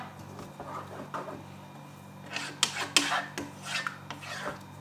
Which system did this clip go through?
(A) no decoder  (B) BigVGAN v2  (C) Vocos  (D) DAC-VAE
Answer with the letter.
A